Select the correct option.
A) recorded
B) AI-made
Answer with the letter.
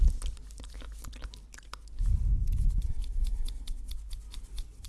A